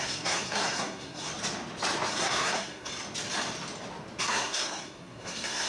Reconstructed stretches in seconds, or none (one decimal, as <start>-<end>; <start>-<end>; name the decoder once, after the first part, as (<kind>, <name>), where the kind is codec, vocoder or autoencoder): 0.0-1.3 (codec, SNAC); 2.1-2.9; 4.2-5.7